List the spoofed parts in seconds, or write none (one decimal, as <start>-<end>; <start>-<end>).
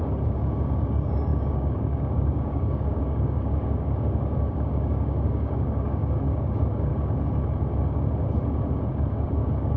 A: 0.0-6.9; 8.9-9.8